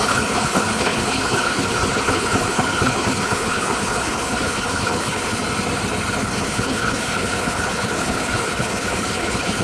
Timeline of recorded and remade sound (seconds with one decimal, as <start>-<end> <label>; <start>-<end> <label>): 0.0-5.4 remade; 5.4-6.2 recorded; 6.2-9.6 remade